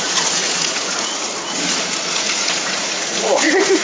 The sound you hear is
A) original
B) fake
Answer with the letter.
B